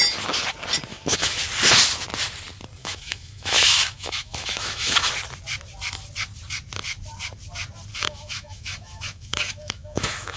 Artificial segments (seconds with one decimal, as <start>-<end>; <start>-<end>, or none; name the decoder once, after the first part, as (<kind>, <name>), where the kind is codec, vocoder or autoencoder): 0.9-1.4 (autoencoder, DAC-VAE); 2.8-5.1; 7.9-10.4